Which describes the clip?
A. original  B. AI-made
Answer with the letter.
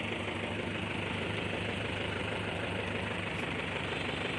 B